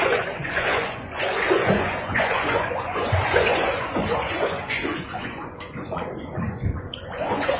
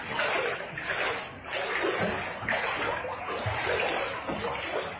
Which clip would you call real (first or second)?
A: second